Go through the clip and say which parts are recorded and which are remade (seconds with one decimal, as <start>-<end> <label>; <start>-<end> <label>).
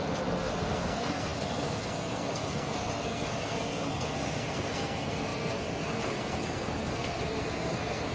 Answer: 0.0-8.1 remade